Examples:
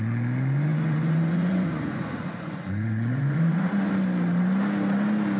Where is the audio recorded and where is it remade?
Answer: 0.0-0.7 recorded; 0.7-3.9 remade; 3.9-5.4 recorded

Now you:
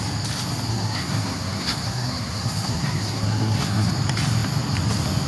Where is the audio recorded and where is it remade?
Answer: 0.0-0.7 recorded; 0.7-3.9 remade; 3.9-5.3 recorded

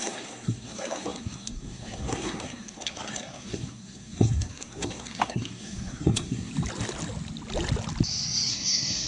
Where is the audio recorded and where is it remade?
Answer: 0.0-6.5 remade; 6.5-8.5 recorded; 8.5-9.1 remade